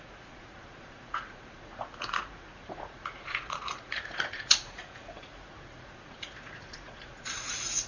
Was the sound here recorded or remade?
remade